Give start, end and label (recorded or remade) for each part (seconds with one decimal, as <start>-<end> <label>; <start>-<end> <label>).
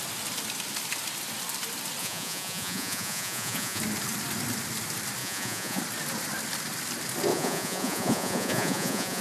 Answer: 0.0-2.0 recorded; 2.0-3.8 remade; 3.8-5.2 recorded; 5.2-5.8 remade; 5.8-7.3 recorded; 7.3-9.2 remade